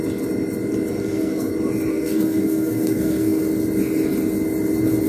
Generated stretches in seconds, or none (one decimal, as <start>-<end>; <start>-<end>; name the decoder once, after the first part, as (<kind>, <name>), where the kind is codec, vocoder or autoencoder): 1.0-1.5 (codec, SNAC); 1.9-3.4